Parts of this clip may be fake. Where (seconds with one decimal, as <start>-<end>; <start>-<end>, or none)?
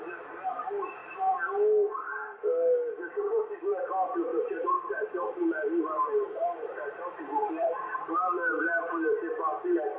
4.3-8.6